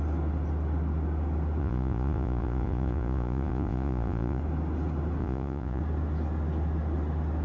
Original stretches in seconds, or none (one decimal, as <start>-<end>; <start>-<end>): 0.0-1.6; 4.4-5.2; 5.8-7.4